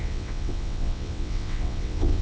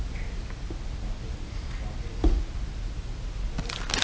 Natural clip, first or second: second